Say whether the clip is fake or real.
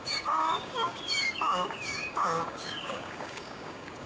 fake